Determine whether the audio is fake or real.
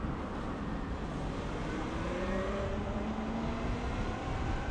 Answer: real